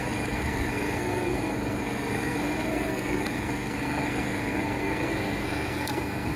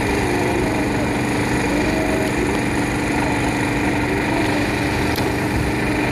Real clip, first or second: second